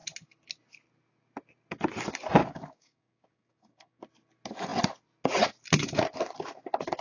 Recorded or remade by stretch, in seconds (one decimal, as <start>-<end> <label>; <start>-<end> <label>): 0.0-2.4 recorded; 2.4-4.0 remade; 4.0-7.0 recorded